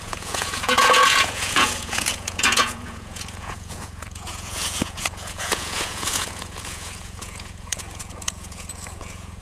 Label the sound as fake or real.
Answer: fake